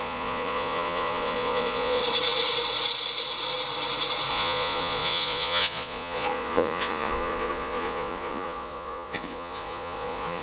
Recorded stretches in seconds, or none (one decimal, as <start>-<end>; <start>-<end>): 2.0-4.3